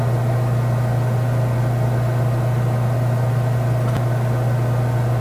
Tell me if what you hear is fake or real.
real